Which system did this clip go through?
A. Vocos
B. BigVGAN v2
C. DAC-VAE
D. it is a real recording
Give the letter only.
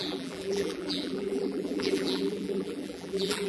B